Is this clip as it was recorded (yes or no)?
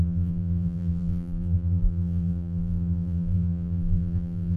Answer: no